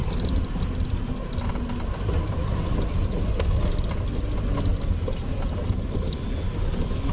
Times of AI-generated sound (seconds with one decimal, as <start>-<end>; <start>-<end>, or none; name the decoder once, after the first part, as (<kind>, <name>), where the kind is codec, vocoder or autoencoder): none